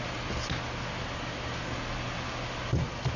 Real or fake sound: real